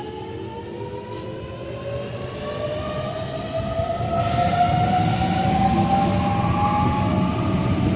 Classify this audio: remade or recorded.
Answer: recorded